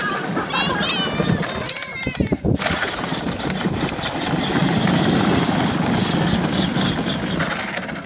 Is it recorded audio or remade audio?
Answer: recorded